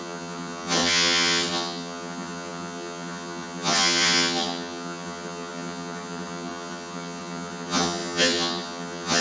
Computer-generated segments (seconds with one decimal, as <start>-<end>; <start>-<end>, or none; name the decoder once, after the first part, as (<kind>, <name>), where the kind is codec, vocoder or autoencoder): 0.0-9.2 (vocoder, HiFi-GAN)